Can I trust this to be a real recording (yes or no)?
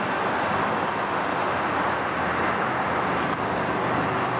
yes